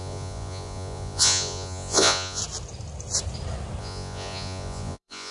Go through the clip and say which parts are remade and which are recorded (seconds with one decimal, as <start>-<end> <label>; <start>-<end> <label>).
0.0-2.4 remade; 2.4-3.8 recorded; 3.8-5.3 remade